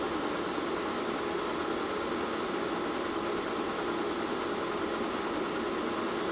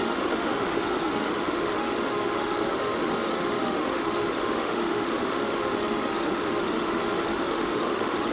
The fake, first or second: second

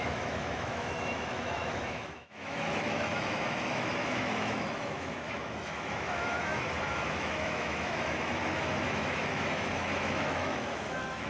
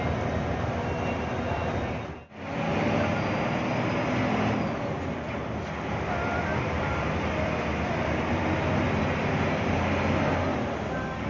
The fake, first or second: first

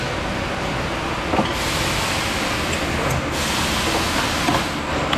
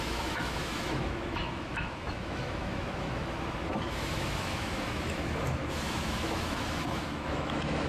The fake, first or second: second